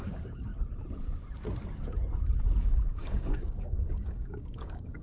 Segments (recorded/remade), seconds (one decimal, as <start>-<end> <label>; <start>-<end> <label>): 0.0-0.5 remade; 0.5-2.6 recorded; 2.6-5.0 remade